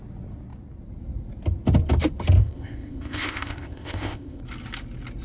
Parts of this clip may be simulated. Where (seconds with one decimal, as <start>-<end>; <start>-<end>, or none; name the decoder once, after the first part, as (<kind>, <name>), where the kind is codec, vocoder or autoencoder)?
2.4-4.4 (codec, ZipCodec)